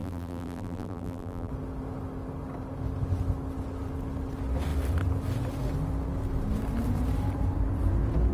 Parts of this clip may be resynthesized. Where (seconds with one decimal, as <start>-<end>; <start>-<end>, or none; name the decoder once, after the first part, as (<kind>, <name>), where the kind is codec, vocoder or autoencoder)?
0.0-1.5 (vocoder, BigVGAN v2)